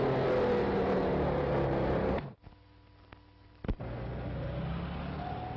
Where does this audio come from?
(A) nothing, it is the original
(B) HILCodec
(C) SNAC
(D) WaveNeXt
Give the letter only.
A